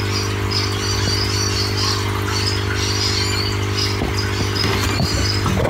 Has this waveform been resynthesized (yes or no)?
no